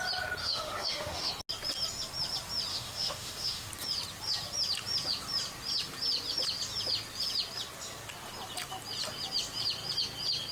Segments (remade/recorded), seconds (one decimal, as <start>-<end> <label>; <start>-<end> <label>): 0.0-0.4 recorded; 0.4-1.3 remade; 1.3-2.7 recorded; 2.7-3.7 remade; 3.7-10.5 recorded